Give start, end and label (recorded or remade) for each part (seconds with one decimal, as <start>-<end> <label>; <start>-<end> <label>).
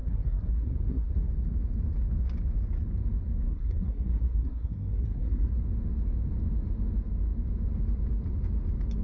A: 0.0-1.3 remade; 1.3-3.5 recorded; 3.5-5.5 remade; 5.5-9.0 recorded